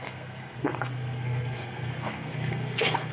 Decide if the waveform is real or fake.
fake